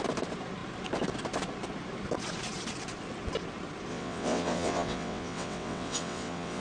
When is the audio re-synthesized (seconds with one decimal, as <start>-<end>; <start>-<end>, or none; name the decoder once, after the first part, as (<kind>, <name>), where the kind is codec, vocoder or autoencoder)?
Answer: 3.9-6.6 (vocoder, WaveNeXt)